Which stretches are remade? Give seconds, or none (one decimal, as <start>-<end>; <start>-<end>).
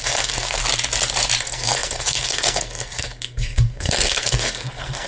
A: 0.0-0.6; 1.4-5.1